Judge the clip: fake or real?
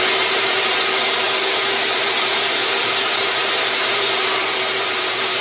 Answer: fake